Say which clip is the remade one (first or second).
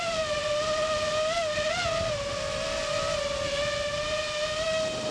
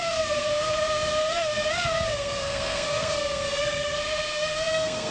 second